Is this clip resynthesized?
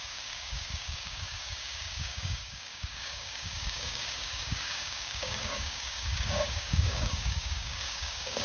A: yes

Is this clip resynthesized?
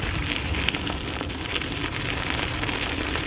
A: no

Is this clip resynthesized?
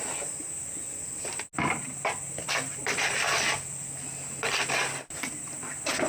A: no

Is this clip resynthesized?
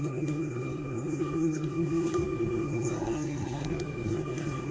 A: yes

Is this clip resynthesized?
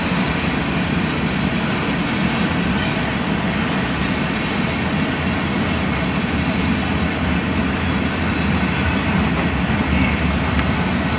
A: no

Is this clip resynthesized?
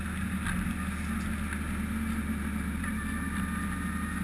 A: no